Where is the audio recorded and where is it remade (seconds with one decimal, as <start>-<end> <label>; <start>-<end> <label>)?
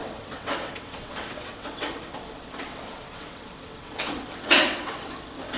0.0-5.6 remade